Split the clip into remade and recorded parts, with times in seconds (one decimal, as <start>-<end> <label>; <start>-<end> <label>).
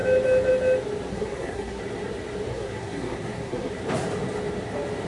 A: 0.0-1.1 recorded; 1.1-1.8 remade; 1.8-2.5 recorded; 2.5-3.7 remade; 3.7-5.1 recorded